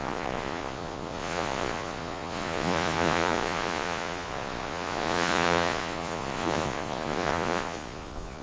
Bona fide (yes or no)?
no